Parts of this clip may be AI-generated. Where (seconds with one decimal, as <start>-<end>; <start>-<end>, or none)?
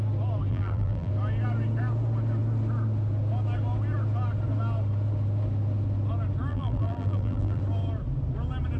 0.5-1.1; 6.5-7.6